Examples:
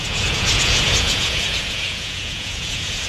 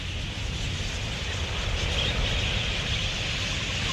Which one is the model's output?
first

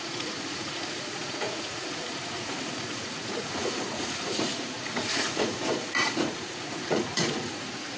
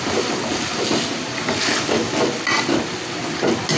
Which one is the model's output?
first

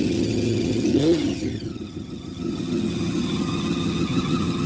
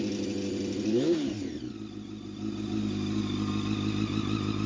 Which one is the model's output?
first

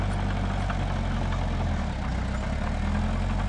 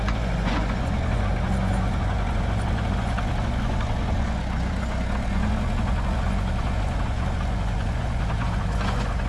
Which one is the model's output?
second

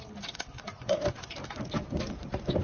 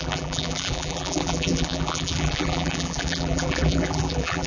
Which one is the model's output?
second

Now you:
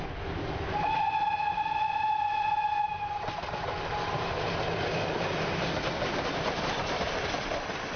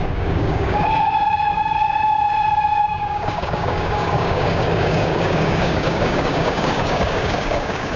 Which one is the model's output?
second